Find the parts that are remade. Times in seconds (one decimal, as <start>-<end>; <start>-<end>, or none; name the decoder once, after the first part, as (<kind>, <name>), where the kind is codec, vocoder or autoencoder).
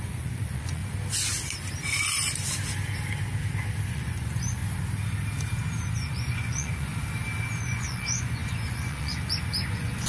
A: 0.0-0.8 (vocoder, Vocos); 3.9-4.6; 5.8-6.9; 7.6-10.1